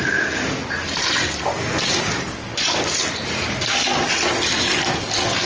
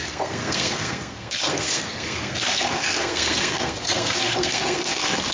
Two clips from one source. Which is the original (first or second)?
first